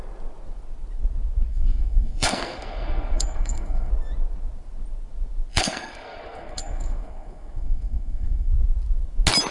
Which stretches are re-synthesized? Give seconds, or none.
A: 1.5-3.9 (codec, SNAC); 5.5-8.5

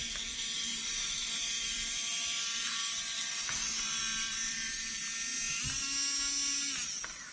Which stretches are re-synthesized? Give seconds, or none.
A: 0.0-5.0 (vocoder, BigVGAN v2)

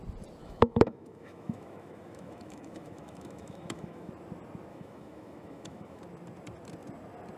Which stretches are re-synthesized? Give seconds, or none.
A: 0.4-4.1 (autoencoder, DAC-VAE); 4.7-6.0

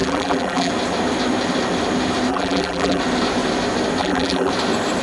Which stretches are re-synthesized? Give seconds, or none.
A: 0.0-0.7 (vocoder, BigVGAN v2); 2.3-3.0; 4.0-4.5